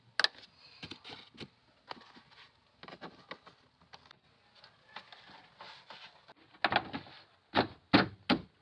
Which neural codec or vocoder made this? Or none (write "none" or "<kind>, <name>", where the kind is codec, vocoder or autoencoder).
none